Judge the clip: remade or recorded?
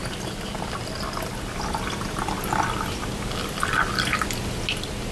recorded